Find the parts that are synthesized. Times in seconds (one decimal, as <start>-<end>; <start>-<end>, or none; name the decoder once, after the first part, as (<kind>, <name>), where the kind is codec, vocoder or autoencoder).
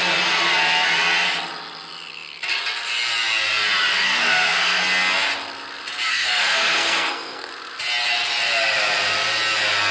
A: 3.9-4.8 (codec, SNAC); 6.1-7.5